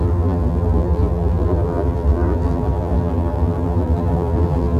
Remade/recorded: remade